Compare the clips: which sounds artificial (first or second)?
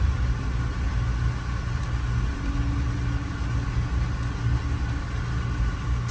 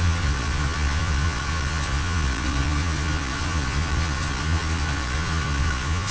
second